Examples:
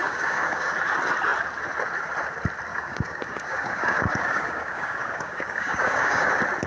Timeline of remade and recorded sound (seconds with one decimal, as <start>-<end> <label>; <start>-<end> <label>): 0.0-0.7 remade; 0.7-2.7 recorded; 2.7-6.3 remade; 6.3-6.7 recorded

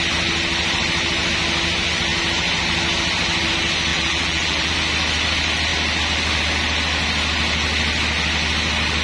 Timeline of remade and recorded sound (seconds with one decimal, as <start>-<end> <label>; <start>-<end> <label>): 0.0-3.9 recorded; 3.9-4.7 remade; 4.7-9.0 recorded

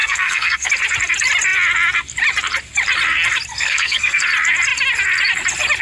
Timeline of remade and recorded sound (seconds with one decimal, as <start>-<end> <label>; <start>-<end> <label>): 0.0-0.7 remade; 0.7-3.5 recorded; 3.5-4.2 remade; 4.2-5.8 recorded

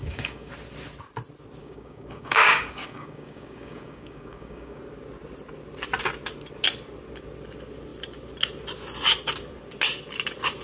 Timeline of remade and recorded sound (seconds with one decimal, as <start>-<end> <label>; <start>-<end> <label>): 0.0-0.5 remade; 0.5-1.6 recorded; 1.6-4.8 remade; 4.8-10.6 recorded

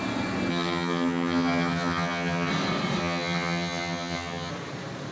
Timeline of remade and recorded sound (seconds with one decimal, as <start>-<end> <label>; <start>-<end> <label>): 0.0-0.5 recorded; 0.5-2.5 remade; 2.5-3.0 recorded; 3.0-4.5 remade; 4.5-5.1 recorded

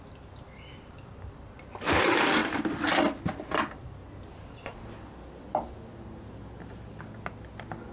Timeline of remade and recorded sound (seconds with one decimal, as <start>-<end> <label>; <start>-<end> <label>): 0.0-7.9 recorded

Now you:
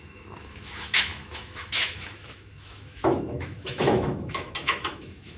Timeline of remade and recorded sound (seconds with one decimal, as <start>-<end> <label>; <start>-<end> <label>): 0.0-5.4 remade

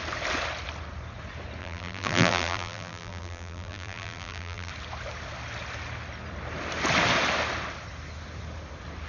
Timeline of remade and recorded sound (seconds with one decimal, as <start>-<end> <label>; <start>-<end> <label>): 0.0-1.6 recorded; 1.6-4.7 remade; 4.7-9.1 recorded